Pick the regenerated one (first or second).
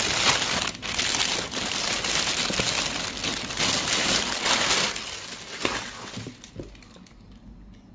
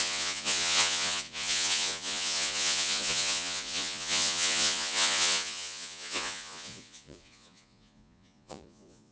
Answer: second